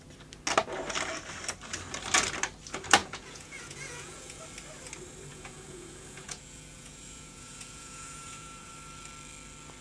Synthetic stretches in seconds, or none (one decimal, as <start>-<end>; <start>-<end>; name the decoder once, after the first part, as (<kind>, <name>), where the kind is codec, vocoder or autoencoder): 3.0-4.4 (vocoder, Vocos); 5.3-8.7

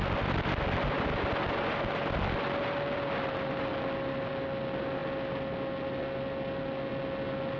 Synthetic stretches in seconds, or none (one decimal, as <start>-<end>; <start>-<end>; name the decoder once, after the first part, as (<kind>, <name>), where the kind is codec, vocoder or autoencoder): none